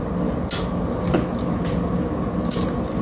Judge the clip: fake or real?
real